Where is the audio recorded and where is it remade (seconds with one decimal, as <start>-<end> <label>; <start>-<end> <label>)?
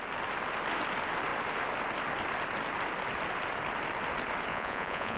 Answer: 0.0-4.5 recorded; 4.5-5.2 remade